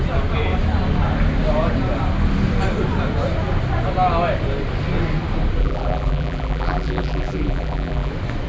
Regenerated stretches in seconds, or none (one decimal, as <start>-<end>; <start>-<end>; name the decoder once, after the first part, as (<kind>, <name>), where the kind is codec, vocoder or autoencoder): 5.6-8.1 (vocoder, BigVGAN v2)